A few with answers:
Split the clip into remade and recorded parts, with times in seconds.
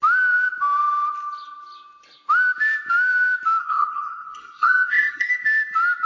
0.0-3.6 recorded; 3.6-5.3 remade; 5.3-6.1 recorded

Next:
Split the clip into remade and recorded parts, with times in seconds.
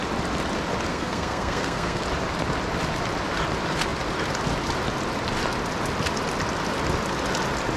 0.0-0.9 recorded; 0.9-2.0 remade; 2.0-7.8 recorded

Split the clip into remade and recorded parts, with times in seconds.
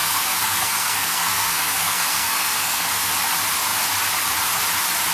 0.0-3.1 remade; 3.1-5.1 recorded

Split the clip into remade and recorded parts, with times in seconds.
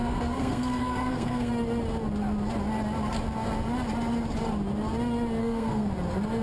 0.0-1.5 remade; 1.5-5.4 recorded; 5.4-5.9 remade; 5.9-6.4 recorded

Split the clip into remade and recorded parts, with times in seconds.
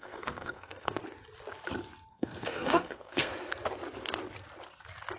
0.0-1.0 remade; 1.0-2.1 recorded; 2.1-3.3 remade; 3.3-5.2 recorded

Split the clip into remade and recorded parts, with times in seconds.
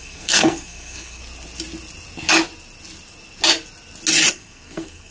0.0-1.2 remade; 1.2-4.3 recorded; 4.3-5.1 remade